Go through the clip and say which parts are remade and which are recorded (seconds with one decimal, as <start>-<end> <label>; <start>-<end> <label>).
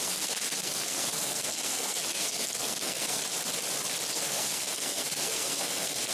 0.0-3.2 remade; 3.2-4.1 recorded; 4.1-6.1 remade